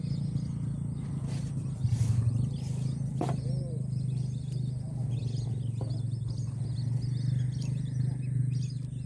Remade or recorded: recorded